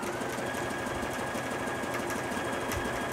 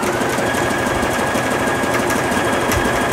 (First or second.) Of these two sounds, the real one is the first